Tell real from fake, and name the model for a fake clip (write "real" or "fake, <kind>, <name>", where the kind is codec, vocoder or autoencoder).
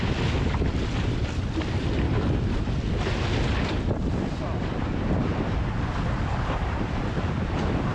real